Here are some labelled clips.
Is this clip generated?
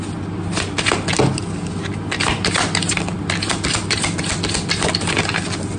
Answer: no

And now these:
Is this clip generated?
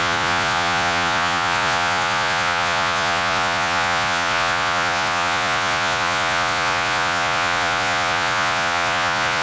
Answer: yes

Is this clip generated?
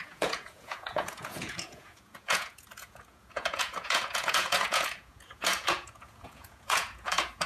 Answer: yes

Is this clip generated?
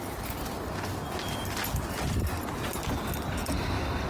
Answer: no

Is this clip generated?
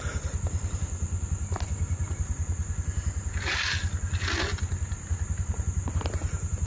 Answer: no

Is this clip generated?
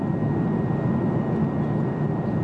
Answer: no